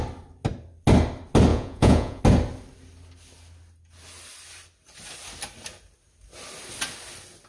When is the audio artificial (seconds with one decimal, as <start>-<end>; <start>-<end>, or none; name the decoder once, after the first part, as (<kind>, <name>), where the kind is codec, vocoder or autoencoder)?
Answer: 1.5-2.2 (vocoder, Vocos)